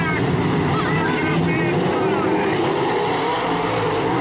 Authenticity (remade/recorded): recorded